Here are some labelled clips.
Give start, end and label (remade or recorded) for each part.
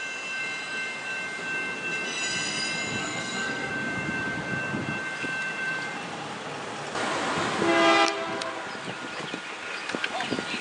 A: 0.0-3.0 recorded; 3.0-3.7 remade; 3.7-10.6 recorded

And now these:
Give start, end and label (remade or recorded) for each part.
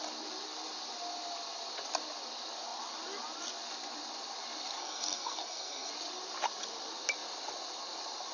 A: 0.0-4.8 recorded; 4.8-5.9 remade; 5.9-8.3 recorded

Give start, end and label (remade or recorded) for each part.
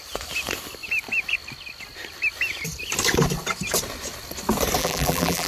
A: 0.0-4.8 recorded; 4.8-5.5 remade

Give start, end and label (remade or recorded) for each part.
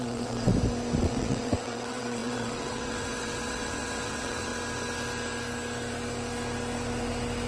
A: 0.0-0.5 remade; 0.5-1.0 recorded; 1.0-4.5 remade; 4.5-7.5 recorded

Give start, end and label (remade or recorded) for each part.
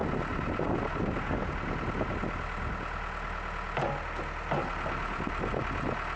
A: 0.0-6.2 recorded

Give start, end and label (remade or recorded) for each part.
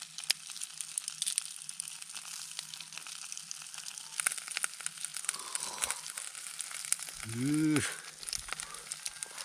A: 0.0-9.4 recorded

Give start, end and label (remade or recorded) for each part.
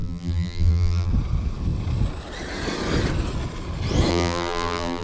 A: 0.0-1.1 remade; 1.1-4.1 recorded; 4.1-5.0 remade